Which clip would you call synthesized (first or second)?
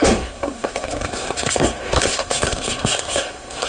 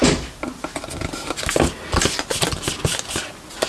first